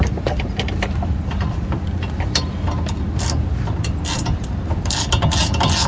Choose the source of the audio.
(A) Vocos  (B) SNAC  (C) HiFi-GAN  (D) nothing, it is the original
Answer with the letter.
D